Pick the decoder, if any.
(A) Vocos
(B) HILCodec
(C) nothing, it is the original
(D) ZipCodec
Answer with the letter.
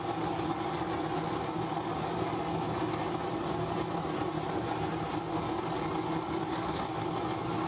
C